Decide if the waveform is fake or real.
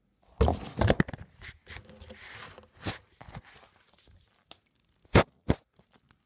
real